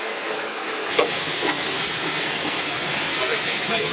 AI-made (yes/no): yes